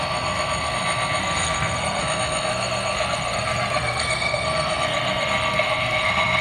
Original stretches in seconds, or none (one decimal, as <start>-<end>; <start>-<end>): 0.0-1.2; 2.0-2.5